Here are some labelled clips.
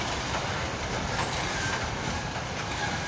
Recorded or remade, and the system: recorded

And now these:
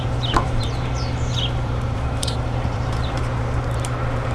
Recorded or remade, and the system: remade, vocoder, BigVGAN v2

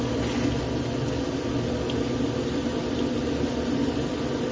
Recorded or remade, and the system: recorded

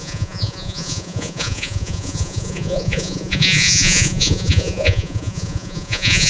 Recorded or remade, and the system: remade, vocoder, Vocos